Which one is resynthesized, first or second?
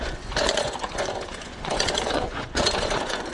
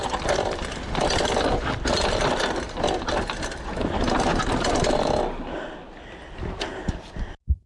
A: first